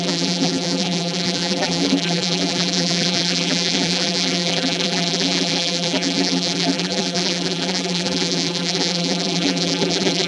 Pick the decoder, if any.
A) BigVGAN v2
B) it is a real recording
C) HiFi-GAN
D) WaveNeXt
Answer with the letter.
A